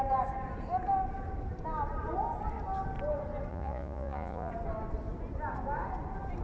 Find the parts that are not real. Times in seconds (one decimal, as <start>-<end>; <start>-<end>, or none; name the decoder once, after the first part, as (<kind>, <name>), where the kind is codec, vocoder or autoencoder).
3.5-4.5 (vocoder, Vocos)